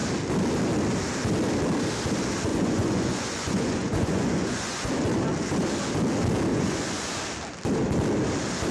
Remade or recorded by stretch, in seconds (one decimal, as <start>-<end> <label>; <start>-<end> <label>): 0.0-2.5 recorded; 2.5-4.9 remade; 4.9-6.5 recorded; 6.5-7.2 remade; 7.2-8.7 recorded